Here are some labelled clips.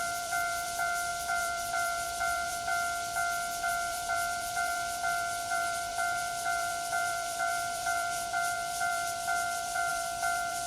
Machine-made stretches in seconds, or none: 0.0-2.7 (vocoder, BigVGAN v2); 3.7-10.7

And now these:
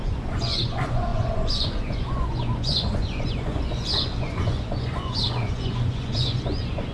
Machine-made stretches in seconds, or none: 0.0-6.9 (vocoder, Vocos)

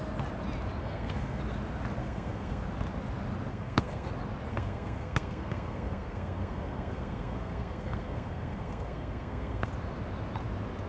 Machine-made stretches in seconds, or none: 0.8-1.4 (codec, SNAC); 2.0-2.6; 3.5-4.1; 4.5-9.7

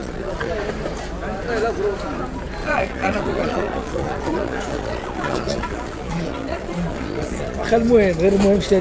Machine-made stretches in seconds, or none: 0.0-0.5 (vocoder, Vocos); 2.6-7.7

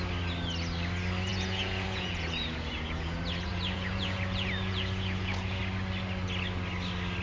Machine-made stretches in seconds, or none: 1.3-5.6 (vocoder, Vocos)

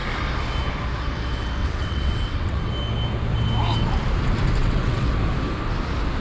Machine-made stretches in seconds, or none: 1.6-2.7 (vocoder, WaveNeXt); 4.6-5.1

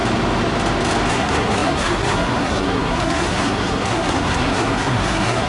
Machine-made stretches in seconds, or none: 1.1-5.5 (codec, SNAC)